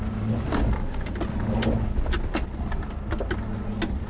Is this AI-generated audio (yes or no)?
no